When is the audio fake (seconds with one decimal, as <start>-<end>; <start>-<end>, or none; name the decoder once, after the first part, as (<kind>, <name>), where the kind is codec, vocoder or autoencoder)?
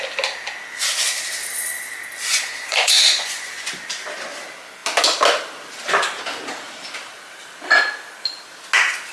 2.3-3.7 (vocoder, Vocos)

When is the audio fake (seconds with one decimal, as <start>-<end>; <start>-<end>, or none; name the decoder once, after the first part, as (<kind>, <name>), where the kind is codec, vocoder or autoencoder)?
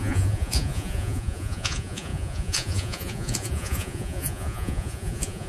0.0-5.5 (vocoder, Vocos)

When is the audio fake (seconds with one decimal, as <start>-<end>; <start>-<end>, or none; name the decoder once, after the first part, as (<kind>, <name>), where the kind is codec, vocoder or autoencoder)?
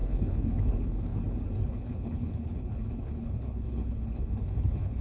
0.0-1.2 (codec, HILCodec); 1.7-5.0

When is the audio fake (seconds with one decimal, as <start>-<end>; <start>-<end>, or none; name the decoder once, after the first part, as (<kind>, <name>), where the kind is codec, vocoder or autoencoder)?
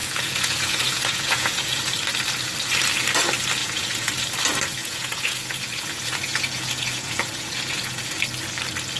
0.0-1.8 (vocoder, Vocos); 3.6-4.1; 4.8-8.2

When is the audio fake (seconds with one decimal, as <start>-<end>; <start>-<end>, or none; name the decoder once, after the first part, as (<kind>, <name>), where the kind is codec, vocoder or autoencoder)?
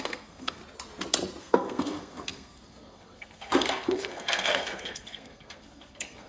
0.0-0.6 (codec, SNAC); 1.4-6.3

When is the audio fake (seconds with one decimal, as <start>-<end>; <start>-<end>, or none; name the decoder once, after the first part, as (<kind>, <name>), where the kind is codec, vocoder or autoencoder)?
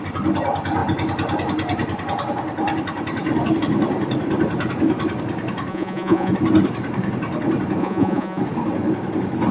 5.7-6.3 (vocoder, Vocos); 7.8-8.4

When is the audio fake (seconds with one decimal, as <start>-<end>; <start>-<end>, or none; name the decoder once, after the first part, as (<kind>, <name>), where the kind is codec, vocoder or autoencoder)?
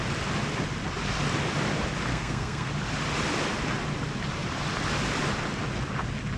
2.1-2.7 (codec, SNAC)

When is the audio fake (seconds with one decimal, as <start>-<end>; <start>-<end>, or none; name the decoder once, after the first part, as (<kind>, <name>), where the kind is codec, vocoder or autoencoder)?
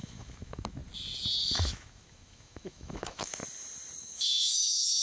0.0-0.8 (autoencoder, DAC-VAE); 1.4-3.4; 4.0-5.0